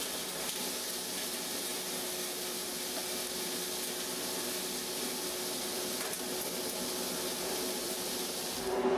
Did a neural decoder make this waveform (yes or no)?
no